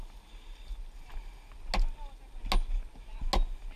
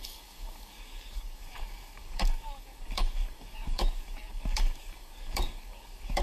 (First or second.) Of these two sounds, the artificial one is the second